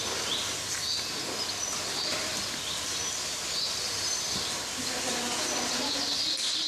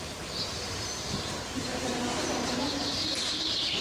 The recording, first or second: first